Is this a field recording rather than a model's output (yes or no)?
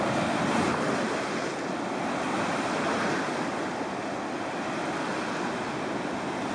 yes